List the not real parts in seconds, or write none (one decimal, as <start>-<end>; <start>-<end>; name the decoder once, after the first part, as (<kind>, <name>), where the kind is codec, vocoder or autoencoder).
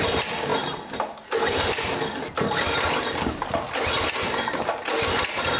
none